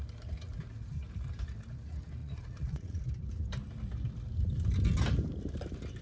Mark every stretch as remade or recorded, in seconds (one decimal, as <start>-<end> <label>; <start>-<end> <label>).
0.0-2.2 recorded; 2.2-3.0 remade; 3.0-6.0 recorded